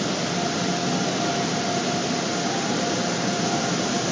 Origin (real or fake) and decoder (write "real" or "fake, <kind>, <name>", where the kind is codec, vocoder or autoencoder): real